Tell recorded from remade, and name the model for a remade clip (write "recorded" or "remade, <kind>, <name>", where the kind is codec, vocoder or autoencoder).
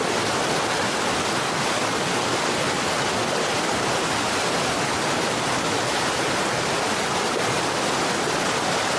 recorded